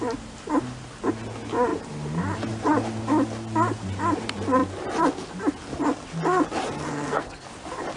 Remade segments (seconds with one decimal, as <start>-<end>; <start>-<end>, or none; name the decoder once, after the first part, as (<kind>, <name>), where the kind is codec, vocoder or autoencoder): 6.9-7.5 (codec, SNAC)